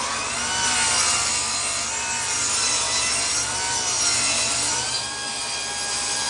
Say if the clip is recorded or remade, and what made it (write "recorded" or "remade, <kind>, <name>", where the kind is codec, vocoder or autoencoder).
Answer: recorded